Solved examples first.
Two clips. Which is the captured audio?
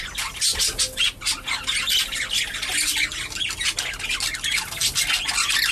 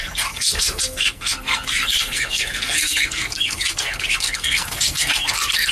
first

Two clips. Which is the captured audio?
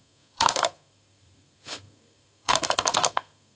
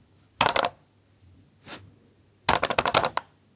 second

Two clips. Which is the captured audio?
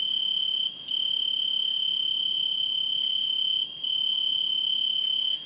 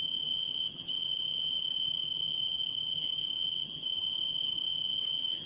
first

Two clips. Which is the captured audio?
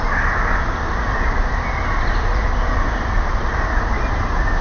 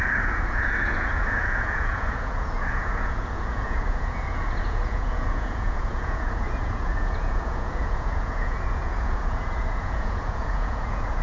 first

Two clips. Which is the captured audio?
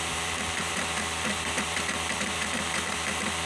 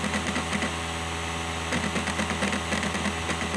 second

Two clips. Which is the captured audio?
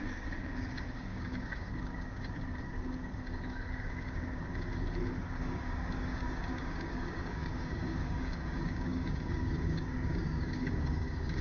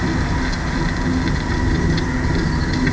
second